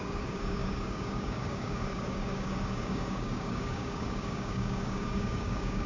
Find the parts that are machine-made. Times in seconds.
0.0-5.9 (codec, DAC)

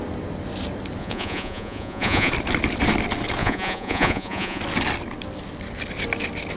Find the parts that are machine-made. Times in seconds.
1.0-2.3 (vocoder, Vocos); 3.4-4.6